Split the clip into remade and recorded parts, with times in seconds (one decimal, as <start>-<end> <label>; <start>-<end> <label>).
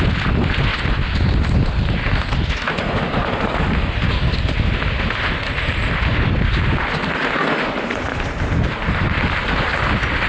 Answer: 0.0-10.3 recorded